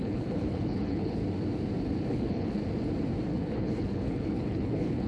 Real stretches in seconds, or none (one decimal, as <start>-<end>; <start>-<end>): 1.2-2.1; 2.6-3.3